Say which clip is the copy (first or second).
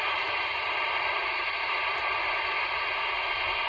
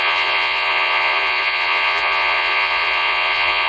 second